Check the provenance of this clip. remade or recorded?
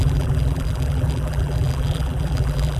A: remade